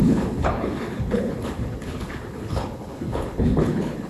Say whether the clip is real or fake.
fake